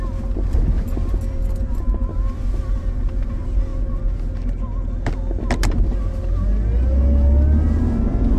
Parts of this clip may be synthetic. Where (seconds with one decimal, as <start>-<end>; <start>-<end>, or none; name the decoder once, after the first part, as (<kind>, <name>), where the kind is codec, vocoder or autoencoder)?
none